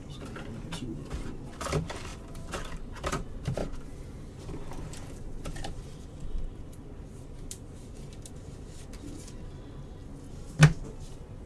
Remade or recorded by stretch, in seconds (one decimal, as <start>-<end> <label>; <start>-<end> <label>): 0.0-10.0 remade; 10.0-10.8 recorded; 10.8-11.5 remade